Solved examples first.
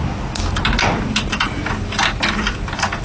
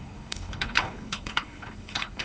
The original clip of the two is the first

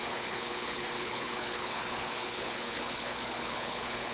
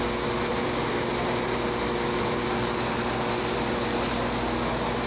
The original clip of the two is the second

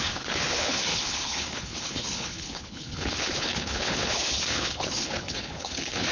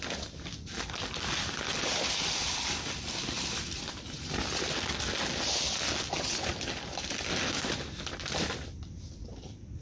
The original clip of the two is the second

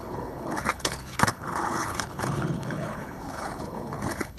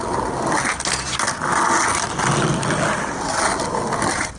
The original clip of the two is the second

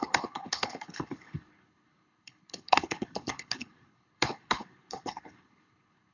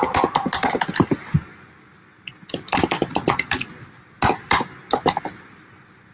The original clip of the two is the second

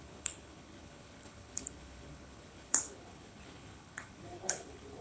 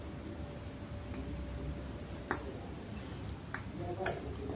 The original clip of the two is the second